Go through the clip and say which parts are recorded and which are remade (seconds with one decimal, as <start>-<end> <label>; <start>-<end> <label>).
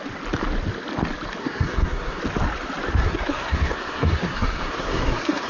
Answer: 0.0-1.4 recorded; 1.4-2.2 remade; 2.2-3.0 recorded; 3.0-5.5 remade